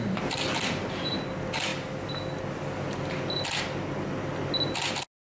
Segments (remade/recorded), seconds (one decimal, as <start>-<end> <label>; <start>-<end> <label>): 0.0-5.3 recorded